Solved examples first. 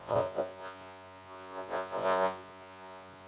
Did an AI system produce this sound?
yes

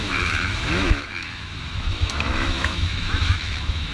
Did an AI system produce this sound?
yes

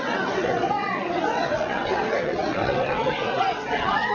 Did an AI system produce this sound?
yes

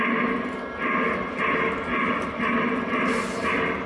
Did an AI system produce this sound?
no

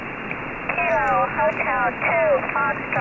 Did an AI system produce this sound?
no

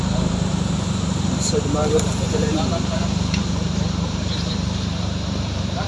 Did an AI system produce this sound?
yes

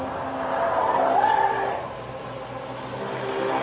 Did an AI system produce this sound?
no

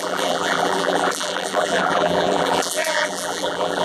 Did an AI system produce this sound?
yes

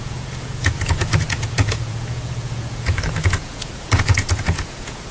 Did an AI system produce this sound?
yes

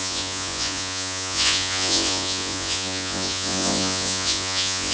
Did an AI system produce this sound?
yes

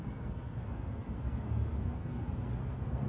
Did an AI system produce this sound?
yes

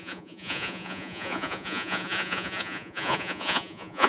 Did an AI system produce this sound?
yes